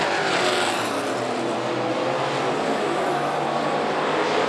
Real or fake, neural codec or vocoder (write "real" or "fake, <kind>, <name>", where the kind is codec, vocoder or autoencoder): real